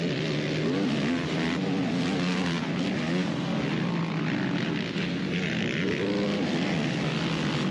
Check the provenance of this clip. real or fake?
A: real